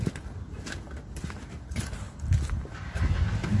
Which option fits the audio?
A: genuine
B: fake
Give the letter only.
A